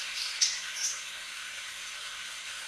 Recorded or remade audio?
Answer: remade